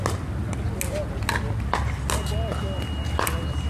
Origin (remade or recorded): recorded